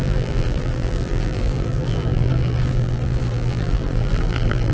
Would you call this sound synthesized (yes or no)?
yes